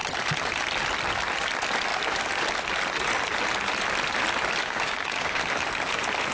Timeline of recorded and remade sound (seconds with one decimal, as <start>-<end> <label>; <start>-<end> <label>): 0.0-4.6 recorded; 4.6-5.4 remade; 5.4-6.3 recorded